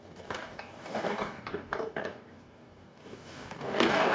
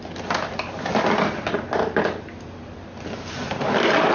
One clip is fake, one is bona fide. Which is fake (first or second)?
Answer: first